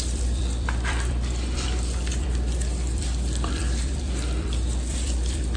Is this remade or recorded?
remade